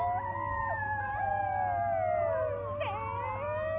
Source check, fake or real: real